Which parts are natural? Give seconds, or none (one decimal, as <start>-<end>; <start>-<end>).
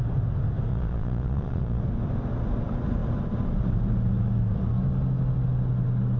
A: 0.0-0.7; 1.8-6.2